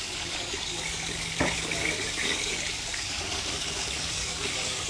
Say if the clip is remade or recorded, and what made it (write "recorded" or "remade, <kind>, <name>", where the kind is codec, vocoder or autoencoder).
remade, codec, DAC